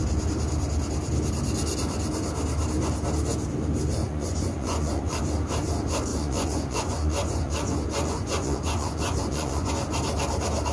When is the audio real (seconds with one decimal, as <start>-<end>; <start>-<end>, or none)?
0.0-4.0; 5.2-6.1; 9.7-10.7